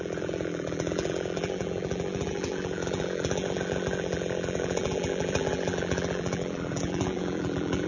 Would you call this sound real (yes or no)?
no